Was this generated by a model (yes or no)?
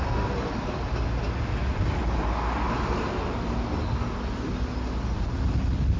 no